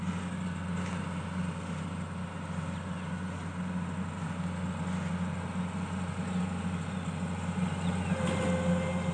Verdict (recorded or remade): recorded